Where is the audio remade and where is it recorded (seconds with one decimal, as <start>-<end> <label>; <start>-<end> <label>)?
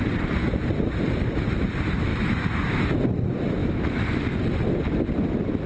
0.0-2.1 recorded; 2.1-2.9 remade; 2.9-3.6 recorded; 3.6-4.2 remade; 4.2-5.7 recorded